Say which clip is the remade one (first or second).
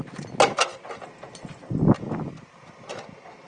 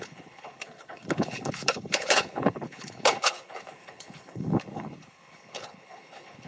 second